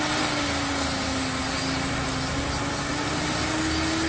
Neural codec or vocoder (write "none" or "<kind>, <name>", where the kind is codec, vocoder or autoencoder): none